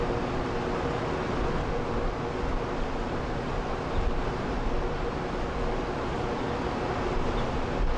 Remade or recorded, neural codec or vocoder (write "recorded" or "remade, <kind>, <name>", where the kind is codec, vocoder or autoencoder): recorded